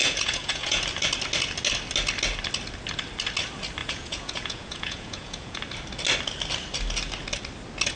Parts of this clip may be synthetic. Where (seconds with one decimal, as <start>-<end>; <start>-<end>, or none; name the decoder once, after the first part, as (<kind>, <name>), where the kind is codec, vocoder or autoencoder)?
0.0-0.8 (vocoder, Vocos); 3.8-5.6